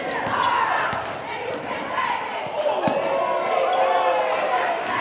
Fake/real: real